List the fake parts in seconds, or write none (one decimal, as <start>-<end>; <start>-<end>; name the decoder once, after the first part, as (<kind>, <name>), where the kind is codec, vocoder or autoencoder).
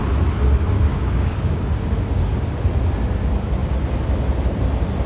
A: 0.9-2.6 (codec, DAC)